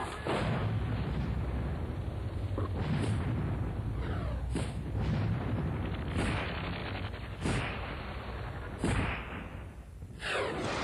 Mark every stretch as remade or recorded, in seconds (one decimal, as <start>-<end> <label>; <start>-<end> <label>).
0.0-0.6 remade; 0.6-1.8 recorded; 1.8-6.8 remade; 6.8-7.6 recorded; 7.6-10.8 remade